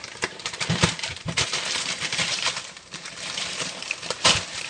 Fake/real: fake